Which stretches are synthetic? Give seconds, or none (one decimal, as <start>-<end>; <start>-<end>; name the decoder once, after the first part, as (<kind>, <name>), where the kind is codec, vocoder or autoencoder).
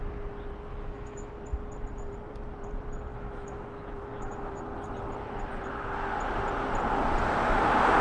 0.7-1.3 (autoencoder, DAC-VAE); 3.1-4.6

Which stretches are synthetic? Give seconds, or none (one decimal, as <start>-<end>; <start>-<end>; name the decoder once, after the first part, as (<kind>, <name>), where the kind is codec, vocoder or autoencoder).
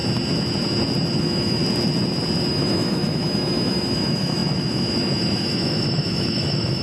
1.2-1.6 (autoencoder, DAC-VAE); 2.5-6.8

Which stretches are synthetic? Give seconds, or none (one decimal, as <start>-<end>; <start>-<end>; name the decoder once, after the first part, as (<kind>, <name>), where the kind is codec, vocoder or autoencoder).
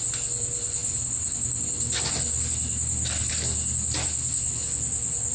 none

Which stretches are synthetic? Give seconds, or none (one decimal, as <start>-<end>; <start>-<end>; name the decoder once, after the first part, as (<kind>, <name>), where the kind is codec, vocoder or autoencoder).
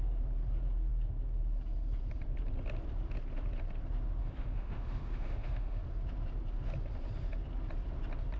4.2-5.8 (autoencoder, DAC-VAE)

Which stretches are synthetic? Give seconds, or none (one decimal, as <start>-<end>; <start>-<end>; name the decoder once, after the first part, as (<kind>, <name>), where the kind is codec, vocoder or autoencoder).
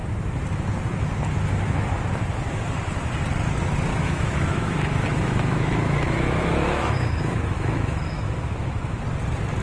3.9-9.0 (autoencoder, DAC-VAE)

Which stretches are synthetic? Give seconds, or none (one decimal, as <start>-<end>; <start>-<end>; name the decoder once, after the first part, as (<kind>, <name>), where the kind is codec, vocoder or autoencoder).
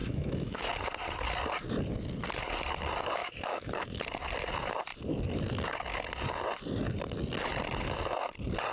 0.0-0.7 (autoencoder, DAC-VAE); 3.2-4.0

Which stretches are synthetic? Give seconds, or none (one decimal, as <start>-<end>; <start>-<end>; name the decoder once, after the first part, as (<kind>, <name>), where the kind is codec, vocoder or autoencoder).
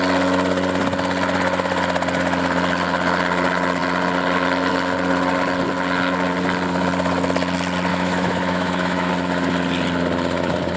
7.9-9.1 (autoencoder, DAC-VAE)